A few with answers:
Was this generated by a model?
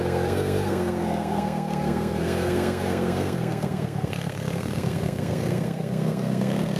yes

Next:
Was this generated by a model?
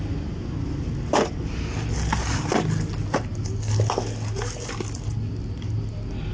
no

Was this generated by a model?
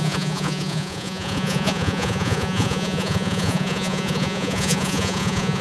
yes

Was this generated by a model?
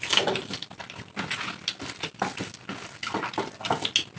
no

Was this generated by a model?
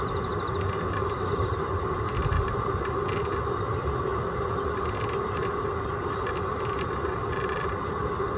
no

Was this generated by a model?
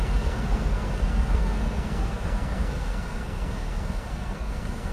yes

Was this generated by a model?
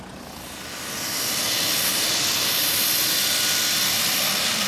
no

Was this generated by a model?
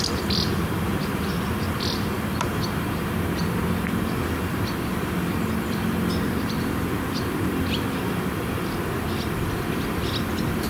yes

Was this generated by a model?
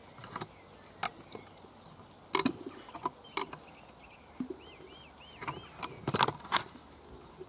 no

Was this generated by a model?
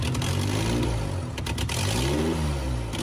no